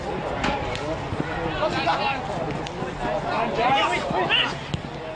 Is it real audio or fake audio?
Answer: real